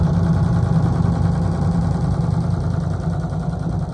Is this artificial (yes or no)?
no